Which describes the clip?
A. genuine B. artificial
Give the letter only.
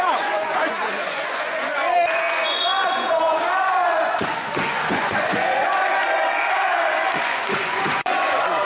B